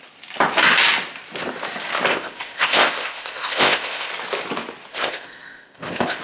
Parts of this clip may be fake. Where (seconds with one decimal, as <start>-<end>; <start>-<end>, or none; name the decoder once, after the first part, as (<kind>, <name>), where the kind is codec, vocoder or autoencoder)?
2.1-4.1 (codec, ZipCodec); 4.9-6.2